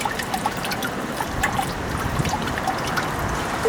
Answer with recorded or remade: remade